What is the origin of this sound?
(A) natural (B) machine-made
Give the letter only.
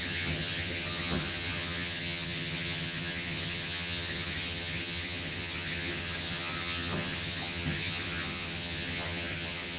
B